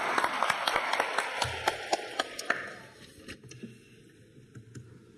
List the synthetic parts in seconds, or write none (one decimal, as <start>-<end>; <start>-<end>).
1.6-2.5